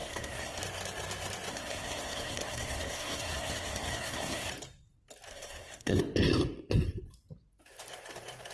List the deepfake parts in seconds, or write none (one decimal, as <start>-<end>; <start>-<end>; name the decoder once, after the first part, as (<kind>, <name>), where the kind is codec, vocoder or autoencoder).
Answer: 0.0-0.6 (codec, SNAC); 1.5-4.5; 5.3-6.0